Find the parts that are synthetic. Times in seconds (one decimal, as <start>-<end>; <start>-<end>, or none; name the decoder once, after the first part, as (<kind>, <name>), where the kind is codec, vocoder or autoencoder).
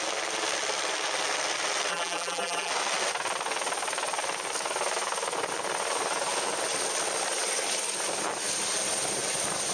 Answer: 1.9-2.7 (vocoder, BigVGAN v2)